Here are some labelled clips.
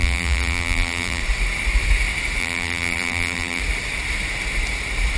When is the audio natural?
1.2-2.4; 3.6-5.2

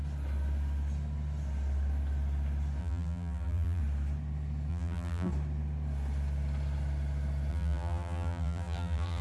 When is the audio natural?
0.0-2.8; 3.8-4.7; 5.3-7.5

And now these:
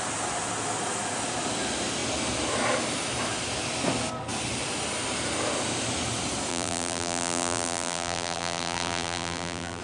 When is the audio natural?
0.0-6.5

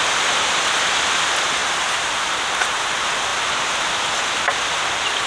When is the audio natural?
3.3-5.3